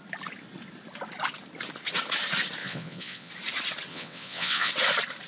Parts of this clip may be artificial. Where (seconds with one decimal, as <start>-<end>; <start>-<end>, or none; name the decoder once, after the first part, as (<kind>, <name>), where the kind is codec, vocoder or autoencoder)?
2.6-3.3 (vocoder, WaveNeXt); 3.9-4.7